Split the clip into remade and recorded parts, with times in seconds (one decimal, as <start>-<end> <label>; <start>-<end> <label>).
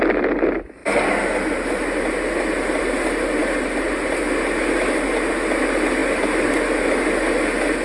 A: 0.0-7.8 recorded